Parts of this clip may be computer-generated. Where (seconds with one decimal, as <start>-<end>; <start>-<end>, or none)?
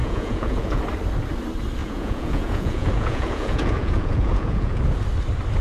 0.0-0.8; 1.8-4.8